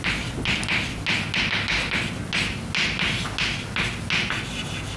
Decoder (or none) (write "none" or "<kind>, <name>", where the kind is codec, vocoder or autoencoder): none